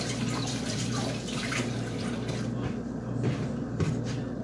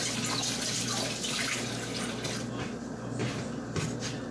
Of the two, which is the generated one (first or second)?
first